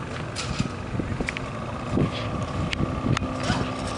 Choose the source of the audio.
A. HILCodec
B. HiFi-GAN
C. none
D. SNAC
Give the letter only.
C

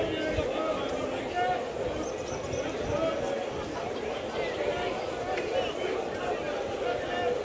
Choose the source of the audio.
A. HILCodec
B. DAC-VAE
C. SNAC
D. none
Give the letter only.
D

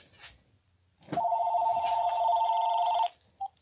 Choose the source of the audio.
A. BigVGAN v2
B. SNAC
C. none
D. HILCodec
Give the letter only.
C